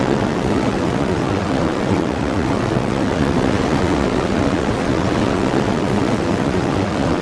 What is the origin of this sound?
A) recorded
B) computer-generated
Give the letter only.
B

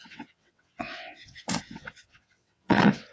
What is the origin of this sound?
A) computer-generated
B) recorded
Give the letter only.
A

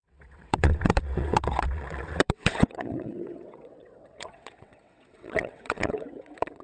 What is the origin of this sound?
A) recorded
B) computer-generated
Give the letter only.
B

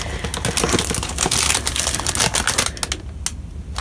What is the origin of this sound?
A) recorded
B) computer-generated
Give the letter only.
A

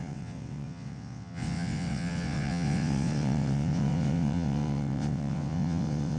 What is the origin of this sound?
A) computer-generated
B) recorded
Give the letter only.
A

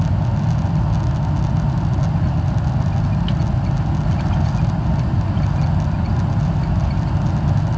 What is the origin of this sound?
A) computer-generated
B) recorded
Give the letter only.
B